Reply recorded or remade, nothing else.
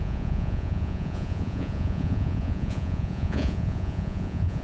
remade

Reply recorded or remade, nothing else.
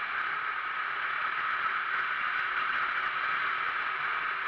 recorded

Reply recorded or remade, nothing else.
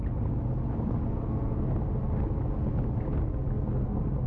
recorded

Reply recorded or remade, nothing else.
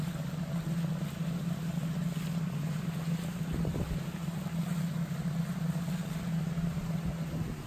recorded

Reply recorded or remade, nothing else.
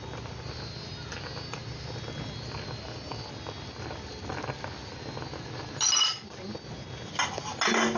recorded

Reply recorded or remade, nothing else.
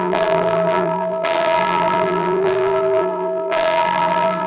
remade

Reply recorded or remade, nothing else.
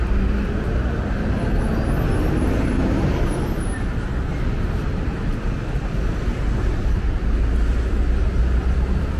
recorded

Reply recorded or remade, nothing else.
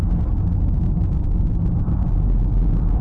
recorded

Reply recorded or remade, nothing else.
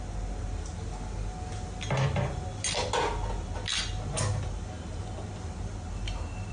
recorded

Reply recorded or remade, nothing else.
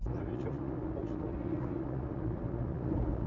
remade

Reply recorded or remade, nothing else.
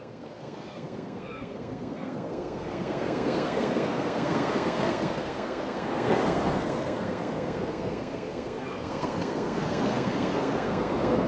remade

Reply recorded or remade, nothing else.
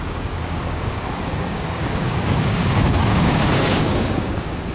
remade